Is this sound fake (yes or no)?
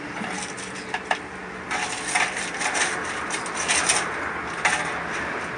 no